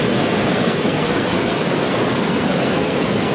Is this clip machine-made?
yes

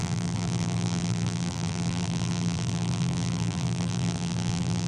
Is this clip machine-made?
yes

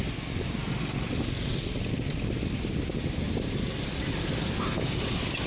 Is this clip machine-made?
no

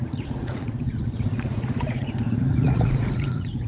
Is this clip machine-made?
yes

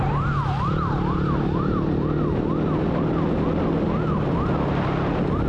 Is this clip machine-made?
no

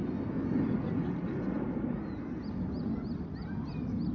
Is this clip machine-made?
no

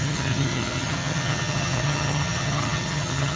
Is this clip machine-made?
yes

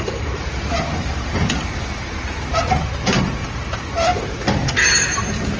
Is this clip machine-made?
yes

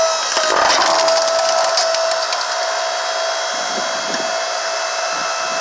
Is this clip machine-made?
no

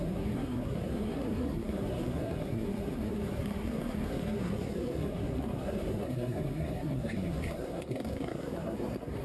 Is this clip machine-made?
yes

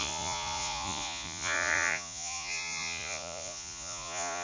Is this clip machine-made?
yes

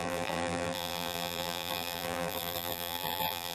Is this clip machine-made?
yes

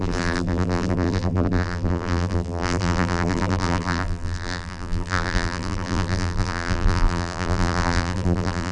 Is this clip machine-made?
yes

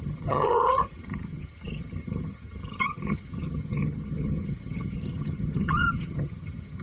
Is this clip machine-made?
yes